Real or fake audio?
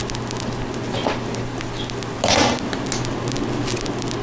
real